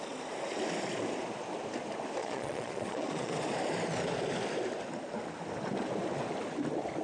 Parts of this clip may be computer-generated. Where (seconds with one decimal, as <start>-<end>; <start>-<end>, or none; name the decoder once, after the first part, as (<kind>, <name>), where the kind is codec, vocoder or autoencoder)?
2.2-3.3 (vocoder, Vocos)